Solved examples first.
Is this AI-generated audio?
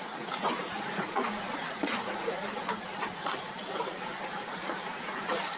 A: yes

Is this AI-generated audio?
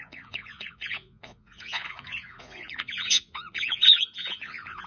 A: yes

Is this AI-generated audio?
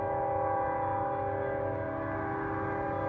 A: no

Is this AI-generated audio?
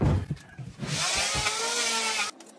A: no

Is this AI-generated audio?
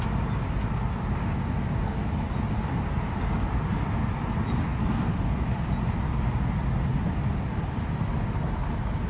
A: no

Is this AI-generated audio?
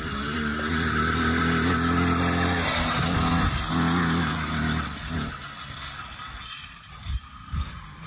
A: no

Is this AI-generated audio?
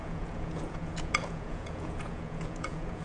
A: yes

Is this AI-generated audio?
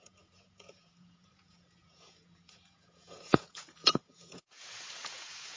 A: yes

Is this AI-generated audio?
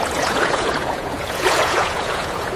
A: yes